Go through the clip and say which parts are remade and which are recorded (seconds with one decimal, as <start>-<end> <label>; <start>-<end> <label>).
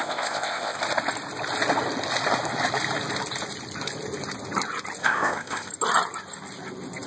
0.0-0.8 remade; 0.8-5.0 recorded; 5.0-5.7 remade; 5.7-7.1 recorded